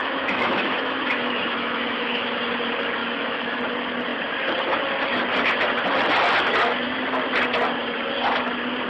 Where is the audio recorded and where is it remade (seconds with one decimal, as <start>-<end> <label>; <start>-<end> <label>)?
0.0-2.4 remade; 2.4-3.0 recorded; 3.0-3.6 remade; 3.6-8.9 recorded